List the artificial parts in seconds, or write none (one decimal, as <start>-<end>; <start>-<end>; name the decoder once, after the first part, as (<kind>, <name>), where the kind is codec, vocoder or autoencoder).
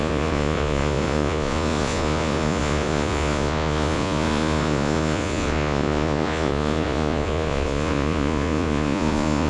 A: 0.0-9.5 (vocoder, Vocos)